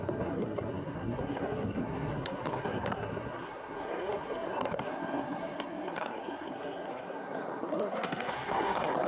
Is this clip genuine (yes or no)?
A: no